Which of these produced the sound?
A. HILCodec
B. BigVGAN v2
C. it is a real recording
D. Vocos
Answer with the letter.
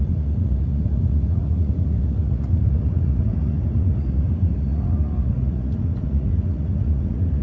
D